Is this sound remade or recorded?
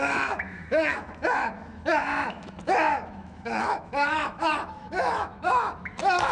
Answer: remade